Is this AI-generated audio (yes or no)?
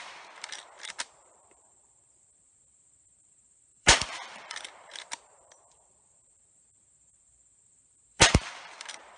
yes